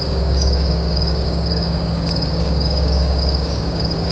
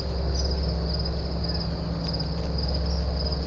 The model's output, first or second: first